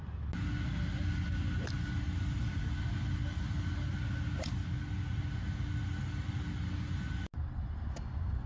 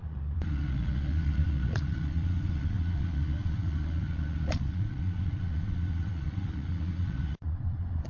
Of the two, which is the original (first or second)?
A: first